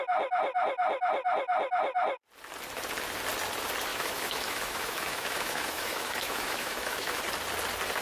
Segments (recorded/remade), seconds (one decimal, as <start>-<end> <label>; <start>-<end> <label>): 0.0-3.9 recorded; 3.9-7.2 remade; 7.2-8.0 recorded